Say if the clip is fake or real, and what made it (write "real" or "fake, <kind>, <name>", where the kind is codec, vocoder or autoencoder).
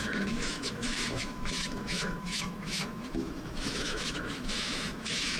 fake, autoencoder, DAC-VAE